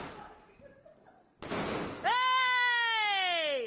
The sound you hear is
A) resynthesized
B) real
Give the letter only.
B